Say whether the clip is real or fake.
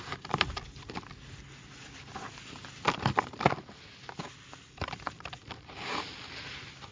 real